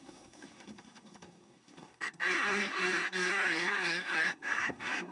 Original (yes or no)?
no